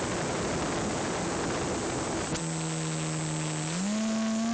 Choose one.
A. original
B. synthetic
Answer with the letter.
A